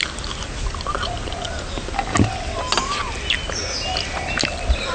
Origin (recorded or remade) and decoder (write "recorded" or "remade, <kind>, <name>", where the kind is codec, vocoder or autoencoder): recorded